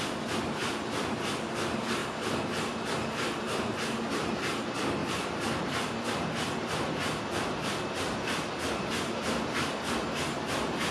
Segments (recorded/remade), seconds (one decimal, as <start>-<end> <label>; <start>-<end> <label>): 0.0-5.0 recorded; 5.0-9.8 remade; 9.8-10.9 recorded